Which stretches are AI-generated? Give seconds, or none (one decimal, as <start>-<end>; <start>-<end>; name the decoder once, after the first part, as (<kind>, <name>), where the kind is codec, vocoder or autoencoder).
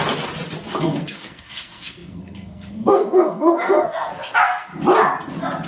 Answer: 0.8-4.7 (codec, SNAC)